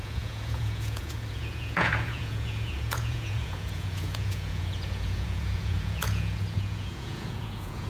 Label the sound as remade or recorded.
remade